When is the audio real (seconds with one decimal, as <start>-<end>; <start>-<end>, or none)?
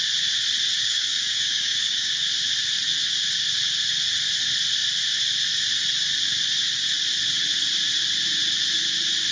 0.0-0.8; 2.1-9.3